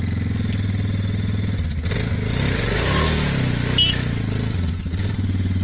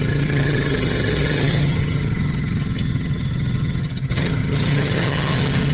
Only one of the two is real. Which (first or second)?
first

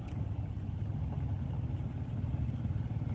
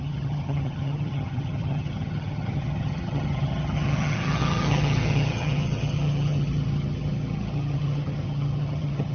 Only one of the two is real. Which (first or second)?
first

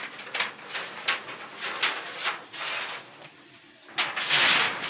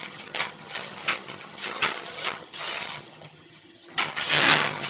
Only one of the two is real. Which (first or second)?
first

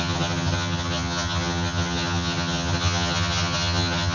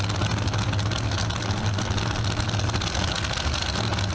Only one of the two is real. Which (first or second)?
second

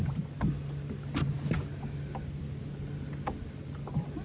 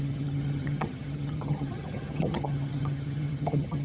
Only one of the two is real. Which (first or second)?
first